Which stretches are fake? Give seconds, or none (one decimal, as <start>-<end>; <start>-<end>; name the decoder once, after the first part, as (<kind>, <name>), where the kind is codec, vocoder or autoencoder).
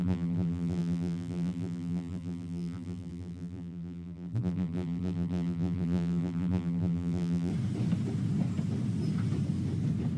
0.0-7.5 (vocoder, BigVGAN v2)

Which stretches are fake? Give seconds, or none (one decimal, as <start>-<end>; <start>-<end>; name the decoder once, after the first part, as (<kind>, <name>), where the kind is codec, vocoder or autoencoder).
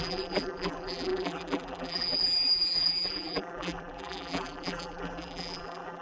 0.0-6.0 (vocoder, BigVGAN v2)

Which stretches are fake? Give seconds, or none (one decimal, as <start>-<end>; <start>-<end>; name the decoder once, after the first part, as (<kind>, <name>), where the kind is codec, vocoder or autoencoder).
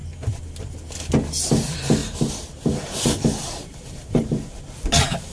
2.0-4.6 (vocoder, BigVGAN v2)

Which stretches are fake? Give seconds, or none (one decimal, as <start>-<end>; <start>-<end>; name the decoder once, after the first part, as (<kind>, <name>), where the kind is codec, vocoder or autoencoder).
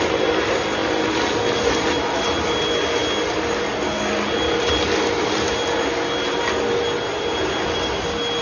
none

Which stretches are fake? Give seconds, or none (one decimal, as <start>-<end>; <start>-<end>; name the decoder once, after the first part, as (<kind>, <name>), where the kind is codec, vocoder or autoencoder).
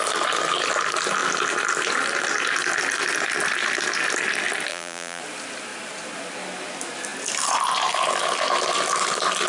4.7-5.2 (vocoder, BigVGAN v2)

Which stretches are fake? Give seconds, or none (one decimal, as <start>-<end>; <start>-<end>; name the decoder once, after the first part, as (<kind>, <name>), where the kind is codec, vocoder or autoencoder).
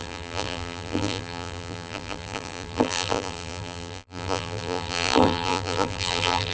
0.0-6.5 (vocoder, BigVGAN v2)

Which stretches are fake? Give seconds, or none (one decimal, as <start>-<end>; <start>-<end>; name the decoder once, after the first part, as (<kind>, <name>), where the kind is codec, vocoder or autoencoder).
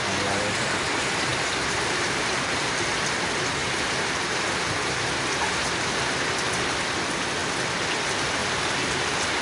1.3-2.9 (vocoder, BigVGAN v2); 3.6-5.6; 8.4-9.4